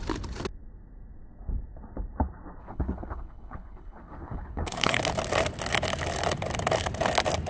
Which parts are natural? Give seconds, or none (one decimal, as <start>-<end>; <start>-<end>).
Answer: 0.0-2.6; 5.0-7.5